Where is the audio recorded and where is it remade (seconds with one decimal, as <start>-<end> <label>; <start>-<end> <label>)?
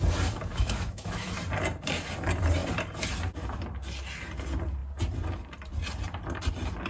0.0-0.5 recorded; 0.5-1.3 remade; 1.3-6.9 recorded